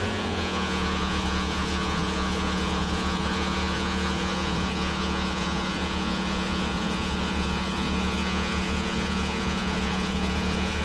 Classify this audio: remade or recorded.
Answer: remade